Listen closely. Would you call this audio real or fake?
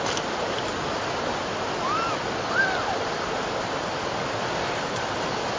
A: real